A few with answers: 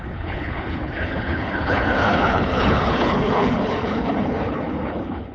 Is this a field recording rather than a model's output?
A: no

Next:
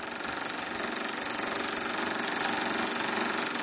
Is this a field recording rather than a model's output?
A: yes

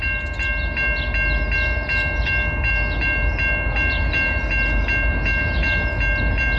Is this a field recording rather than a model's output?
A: yes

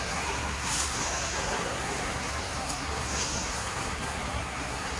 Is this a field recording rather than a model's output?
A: no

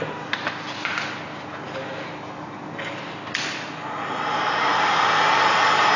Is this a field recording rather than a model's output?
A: yes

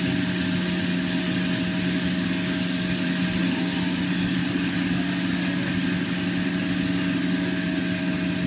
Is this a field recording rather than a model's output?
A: yes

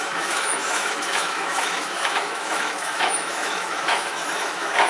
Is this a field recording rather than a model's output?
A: no